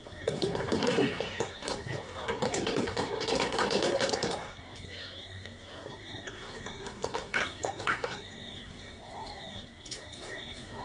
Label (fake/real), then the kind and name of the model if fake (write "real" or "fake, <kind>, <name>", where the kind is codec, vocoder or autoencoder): fake, codec, SNAC